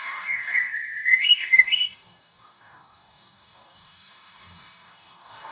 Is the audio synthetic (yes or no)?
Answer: yes